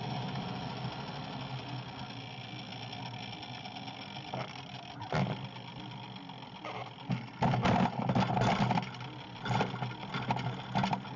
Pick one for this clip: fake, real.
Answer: real